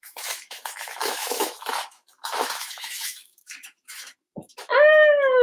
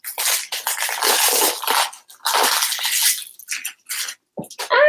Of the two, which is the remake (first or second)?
first